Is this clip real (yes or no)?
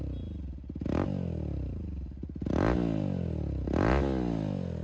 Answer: yes